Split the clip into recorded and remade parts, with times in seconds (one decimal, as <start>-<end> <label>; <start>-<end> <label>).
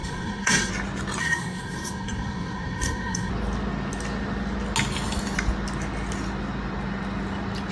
0.0-0.7 remade; 0.7-1.2 recorded; 1.2-3.3 remade; 3.3-7.7 recorded